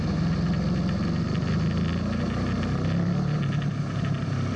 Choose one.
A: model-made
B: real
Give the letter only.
B